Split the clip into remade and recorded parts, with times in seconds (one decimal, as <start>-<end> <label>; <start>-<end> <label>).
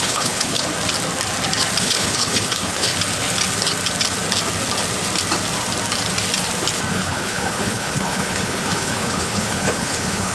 0.0-0.7 remade; 0.7-1.8 recorded; 1.8-2.9 remade; 2.9-6.9 recorded; 6.9-10.3 remade